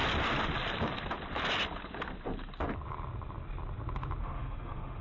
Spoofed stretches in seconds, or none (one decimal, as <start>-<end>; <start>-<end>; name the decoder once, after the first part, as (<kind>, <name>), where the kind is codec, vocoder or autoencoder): 4.2-5.0 (autoencoder, DAC-VAE)